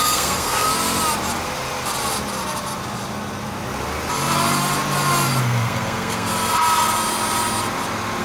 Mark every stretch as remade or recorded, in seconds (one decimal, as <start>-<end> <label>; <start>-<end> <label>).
0.0-0.7 remade; 0.7-5.4 recorded; 5.4-6.3 remade; 6.3-8.2 recorded